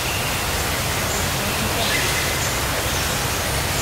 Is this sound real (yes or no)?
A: yes